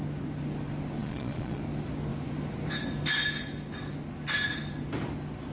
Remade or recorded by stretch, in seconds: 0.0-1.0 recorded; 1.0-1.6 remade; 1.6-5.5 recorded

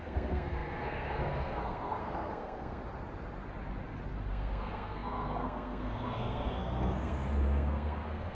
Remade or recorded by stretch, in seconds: 0.0-2.8 remade; 2.8-4.3 recorded; 4.3-8.3 remade

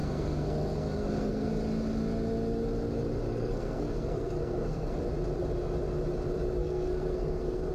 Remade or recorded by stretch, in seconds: 0.0-1.5 remade; 1.5-3.3 recorded; 3.3-5.0 remade; 5.0-6.6 recorded; 6.6-7.7 remade

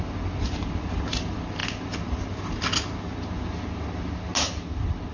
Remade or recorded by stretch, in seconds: 0.0-5.1 recorded

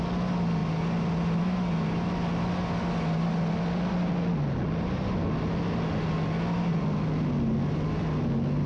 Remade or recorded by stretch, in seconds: 0.0-8.7 recorded

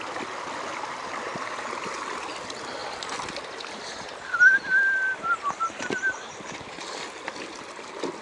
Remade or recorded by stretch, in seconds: 0.0-8.2 recorded

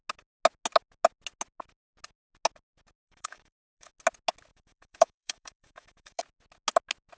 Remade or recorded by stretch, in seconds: 0.0-3.0 recorded; 3.0-3.9 remade; 3.9-4.5 recorded; 4.5-6.2 remade; 6.2-7.2 recorded

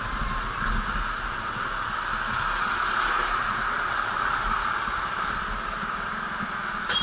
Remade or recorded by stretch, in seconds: 0.0-7.0 recorded